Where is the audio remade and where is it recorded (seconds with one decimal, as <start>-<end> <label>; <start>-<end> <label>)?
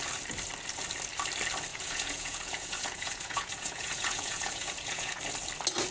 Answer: 0.0-1.7 recorded; 1.7-5.2 remade; 5.2-5.9 recorded